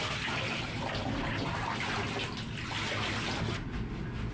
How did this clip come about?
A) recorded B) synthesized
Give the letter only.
A